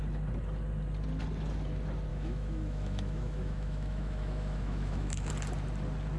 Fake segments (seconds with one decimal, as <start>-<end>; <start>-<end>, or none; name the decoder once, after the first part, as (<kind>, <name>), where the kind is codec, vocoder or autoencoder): 2.1-5.3 (autoencoder, DAC-VAE)